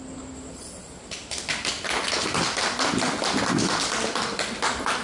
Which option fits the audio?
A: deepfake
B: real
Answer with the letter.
B